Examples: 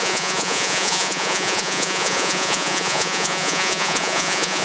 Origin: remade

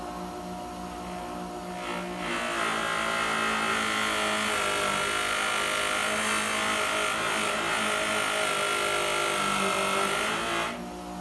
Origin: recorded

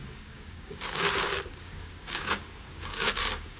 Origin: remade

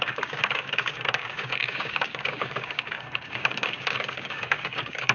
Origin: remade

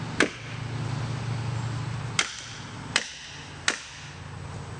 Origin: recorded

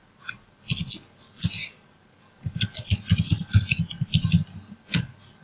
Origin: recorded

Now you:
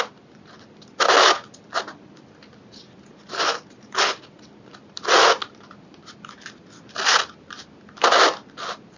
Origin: recorded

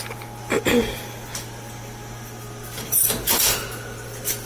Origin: recorded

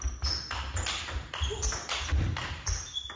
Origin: recorded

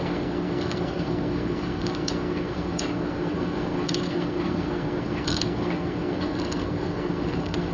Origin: remade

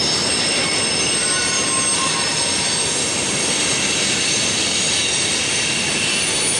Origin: recorded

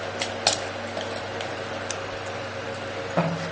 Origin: recorded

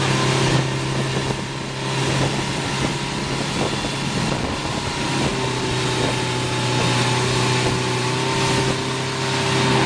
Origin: recorded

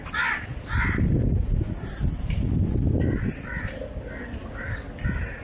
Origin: recorded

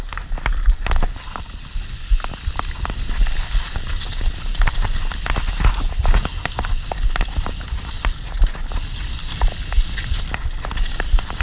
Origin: recorded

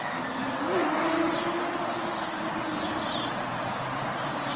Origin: recorded